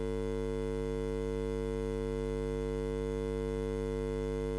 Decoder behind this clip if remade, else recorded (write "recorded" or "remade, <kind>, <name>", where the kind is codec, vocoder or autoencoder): recorded